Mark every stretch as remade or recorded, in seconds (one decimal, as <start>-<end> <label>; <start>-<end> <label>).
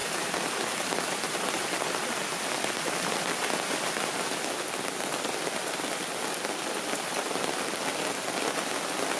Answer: 0.0-9.2 recorded